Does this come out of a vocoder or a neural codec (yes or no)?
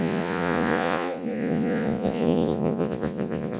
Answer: yes